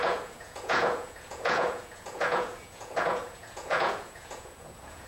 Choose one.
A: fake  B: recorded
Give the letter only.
A